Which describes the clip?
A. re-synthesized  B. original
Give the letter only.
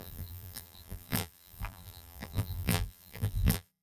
A